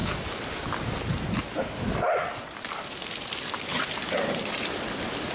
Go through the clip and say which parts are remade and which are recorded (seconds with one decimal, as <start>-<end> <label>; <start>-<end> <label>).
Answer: 0.0-5.3 recorded